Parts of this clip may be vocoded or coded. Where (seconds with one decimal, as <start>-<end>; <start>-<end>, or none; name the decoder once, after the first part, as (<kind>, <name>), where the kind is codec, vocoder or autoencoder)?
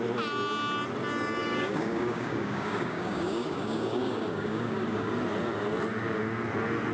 1.4-5.1 (codec, DAC)